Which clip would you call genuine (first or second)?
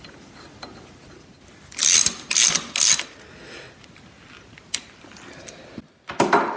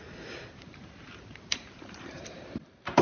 first